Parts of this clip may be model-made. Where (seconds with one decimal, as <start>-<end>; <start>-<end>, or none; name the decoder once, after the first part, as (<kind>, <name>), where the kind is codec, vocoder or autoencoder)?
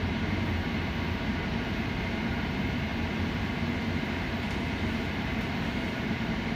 0.0-5.3 (vocoder, BigVGAN v2); 6.0-6.6